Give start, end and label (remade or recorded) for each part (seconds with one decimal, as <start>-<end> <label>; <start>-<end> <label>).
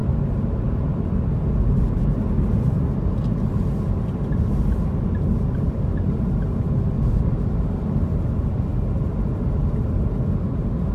0.0-10.9 recorded